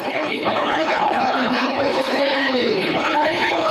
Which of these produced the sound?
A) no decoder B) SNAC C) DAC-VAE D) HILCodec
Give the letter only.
D